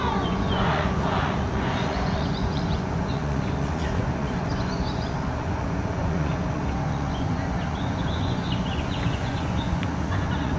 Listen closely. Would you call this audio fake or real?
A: fake